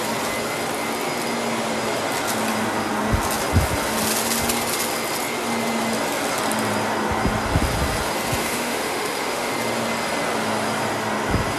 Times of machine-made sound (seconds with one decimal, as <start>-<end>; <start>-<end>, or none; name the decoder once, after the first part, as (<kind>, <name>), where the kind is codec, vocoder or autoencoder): 8.4-9.5 (autoencoder, DAC-VAE)